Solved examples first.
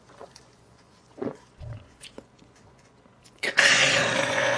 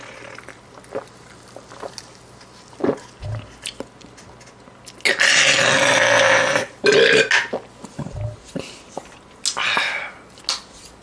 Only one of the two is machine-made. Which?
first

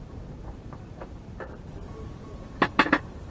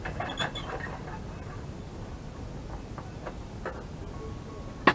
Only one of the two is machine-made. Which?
first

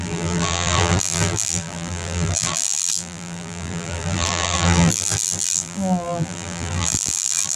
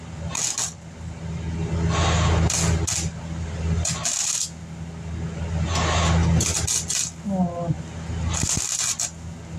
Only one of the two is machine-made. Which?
first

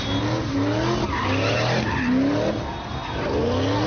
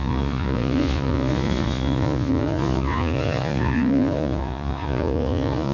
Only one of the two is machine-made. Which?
second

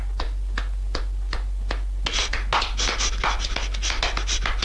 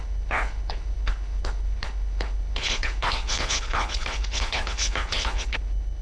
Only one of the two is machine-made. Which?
second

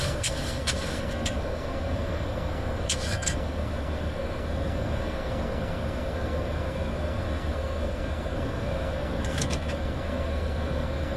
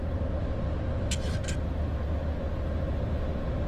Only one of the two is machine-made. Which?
first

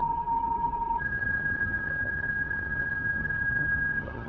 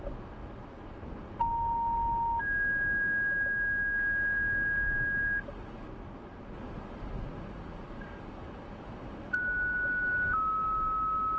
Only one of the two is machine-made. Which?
first